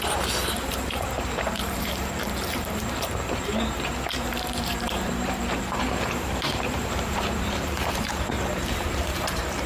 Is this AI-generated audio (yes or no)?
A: yes